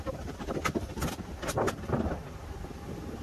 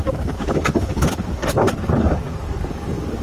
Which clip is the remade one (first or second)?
second